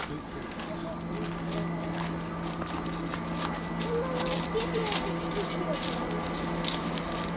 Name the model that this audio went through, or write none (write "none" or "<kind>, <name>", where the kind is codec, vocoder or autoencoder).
none